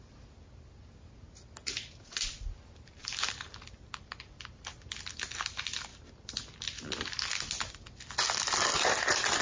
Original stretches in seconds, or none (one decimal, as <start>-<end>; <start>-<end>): 0.0-9.4